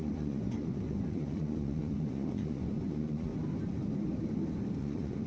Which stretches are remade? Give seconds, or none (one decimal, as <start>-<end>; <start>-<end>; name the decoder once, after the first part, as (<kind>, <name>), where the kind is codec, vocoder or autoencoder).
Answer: 0.0-3.3 (vocoder, Vocos); 4.8-5.3

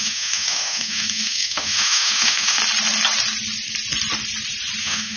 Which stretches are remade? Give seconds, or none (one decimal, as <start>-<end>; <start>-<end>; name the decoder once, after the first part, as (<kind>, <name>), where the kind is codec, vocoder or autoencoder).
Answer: 0.0-2.6 (autoencoder, DAC-VAE); 4.8-5.2

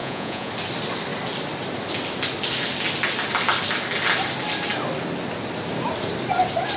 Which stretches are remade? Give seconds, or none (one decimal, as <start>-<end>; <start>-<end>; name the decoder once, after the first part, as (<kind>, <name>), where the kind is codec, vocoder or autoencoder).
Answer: 0.0-0.5 (vocoder, Vocos)

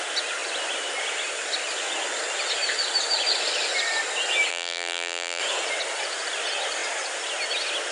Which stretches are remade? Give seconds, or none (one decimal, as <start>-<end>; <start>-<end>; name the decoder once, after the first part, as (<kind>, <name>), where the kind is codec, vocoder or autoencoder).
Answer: 4.5-5.4 (vocoder, BigVGAN v2)

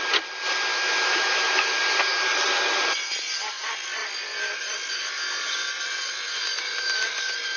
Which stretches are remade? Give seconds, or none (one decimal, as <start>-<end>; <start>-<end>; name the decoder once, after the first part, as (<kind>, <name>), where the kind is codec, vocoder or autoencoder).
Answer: 0.7-1.8 (autoencoder, DAC-VAE)